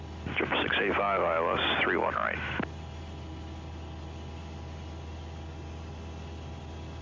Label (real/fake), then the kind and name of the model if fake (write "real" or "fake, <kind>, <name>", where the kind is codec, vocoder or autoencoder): real